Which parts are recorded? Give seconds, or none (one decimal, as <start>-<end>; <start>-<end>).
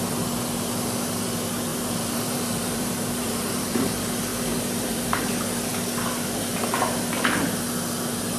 0.0-1.7; 3.9-4.3; 5.2-8.4